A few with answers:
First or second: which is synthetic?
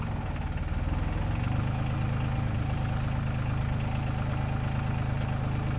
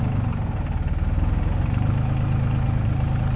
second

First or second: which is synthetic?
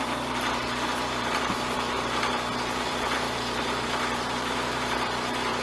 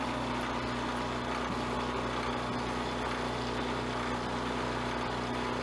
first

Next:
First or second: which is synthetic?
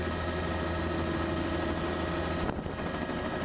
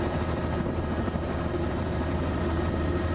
second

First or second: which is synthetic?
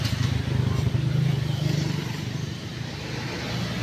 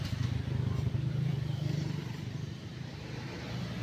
second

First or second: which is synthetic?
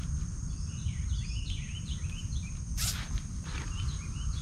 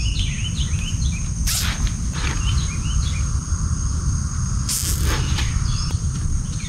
first